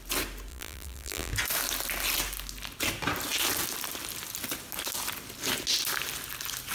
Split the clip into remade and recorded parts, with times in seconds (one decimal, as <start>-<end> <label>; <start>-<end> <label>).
0.0-0.5 recorded; 0.5-1.3 remade; 1.3-6.7 recorded

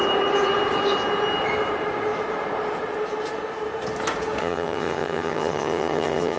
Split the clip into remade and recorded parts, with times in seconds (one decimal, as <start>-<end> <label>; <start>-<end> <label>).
0.0-4.4 recorded; 4.4-6.4 remade

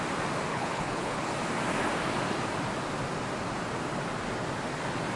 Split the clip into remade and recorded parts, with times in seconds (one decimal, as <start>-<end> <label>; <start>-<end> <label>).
0.0-0.5 recorded; 0.5-1.3 remade; 1.3-5.2 recorded